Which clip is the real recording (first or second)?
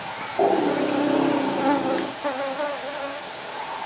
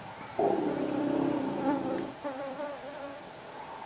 first